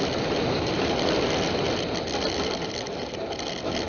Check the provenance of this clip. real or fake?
real